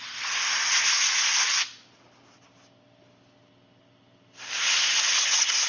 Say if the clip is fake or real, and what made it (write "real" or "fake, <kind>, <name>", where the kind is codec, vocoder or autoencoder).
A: real